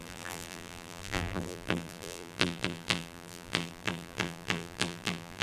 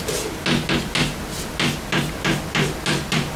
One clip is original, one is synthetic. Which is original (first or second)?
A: second